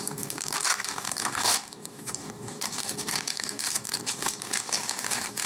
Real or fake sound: fake